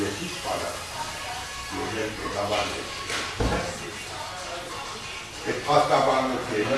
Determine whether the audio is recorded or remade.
recorded